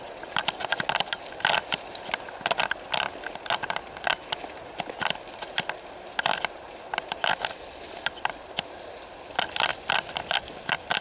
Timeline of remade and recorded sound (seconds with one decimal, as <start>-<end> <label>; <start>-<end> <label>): 0.0-11.0 recorded